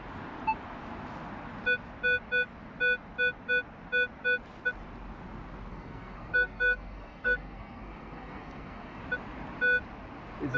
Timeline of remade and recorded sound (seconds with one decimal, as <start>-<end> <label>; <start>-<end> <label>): 0.0-5.7 recorded; 5.7-9.0 remade; 9.0-10.6 recorded